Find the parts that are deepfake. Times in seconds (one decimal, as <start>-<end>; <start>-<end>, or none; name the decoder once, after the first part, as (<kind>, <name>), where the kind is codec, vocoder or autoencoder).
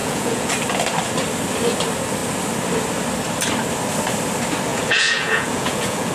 0.0-0.5 (vocoder, Vocos); 4.7-6.1